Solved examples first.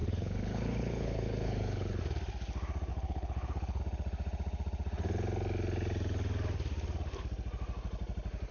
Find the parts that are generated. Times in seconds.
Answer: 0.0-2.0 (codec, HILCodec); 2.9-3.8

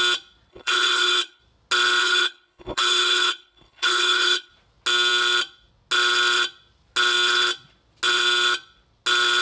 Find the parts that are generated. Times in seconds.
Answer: 0.5-1.4 (codec, HILCodec); 2.0-4.5

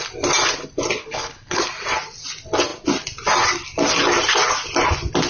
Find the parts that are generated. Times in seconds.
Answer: 1.0-1.6 (codec, HILCodec)